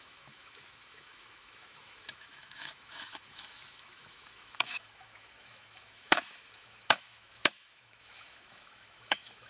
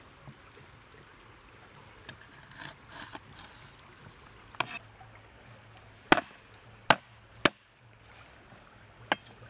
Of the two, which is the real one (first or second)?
second